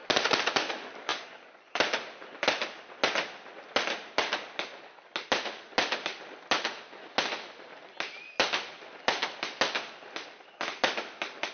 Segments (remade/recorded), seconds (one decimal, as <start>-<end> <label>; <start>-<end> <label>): 0.0-1.1 recorded; 1.1-1.7 remade; 1.7-11.5 recorded